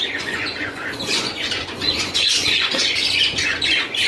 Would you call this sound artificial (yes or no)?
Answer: yes